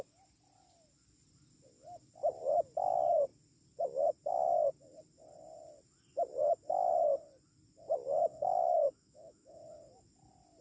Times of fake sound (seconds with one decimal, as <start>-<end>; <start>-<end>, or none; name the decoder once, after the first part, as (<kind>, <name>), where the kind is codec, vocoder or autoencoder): 8.2-9.6 (autoencoder, DAC-VAE)

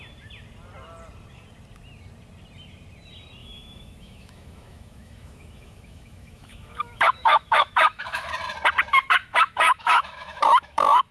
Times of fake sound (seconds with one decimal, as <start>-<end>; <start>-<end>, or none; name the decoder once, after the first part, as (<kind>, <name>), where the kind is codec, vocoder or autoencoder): 3.4-8.3 (autoencoder, DAC-VAE); 8.9-11.1

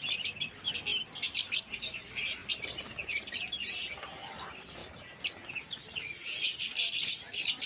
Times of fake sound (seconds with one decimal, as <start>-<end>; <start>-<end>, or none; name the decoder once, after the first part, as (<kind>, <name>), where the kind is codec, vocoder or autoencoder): none

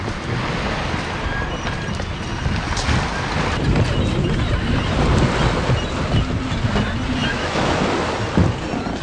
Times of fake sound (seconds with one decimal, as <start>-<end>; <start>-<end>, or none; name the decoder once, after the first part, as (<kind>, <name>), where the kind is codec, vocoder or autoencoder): 7.2-7.8 (autoencoder, DAC-VAE)

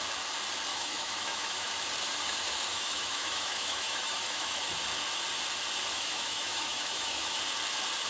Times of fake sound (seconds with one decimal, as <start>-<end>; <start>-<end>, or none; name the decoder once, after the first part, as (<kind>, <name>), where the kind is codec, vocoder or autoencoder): 0.7-1.7 (autoencoder, DAC-VAE); 2.7-4.6; 5.9-7.4

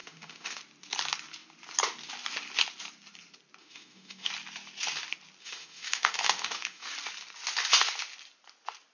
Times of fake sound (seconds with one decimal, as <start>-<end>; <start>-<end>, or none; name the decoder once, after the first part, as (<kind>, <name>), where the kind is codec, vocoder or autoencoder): 0.0-0.6 (autoencoder, DAC-VAE); 3.6-4.3; 5.4-6.9

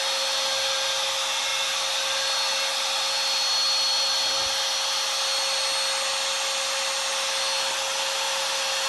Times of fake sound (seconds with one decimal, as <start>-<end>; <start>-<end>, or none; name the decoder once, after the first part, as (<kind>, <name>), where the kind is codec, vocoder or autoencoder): none